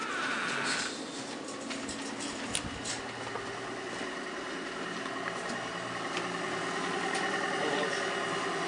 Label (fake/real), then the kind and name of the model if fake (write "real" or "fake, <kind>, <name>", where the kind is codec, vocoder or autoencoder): real